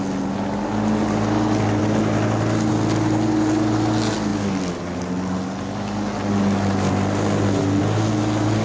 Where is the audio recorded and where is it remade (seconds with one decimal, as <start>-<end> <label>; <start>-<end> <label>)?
0.0-8.6 recorded